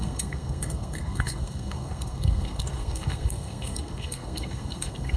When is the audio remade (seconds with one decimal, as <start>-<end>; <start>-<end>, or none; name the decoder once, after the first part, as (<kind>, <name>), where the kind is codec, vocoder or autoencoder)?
0.0-5.2 (codec, SNAC)